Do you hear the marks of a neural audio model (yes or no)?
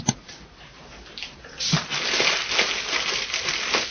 no